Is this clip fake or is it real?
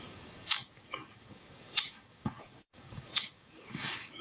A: fake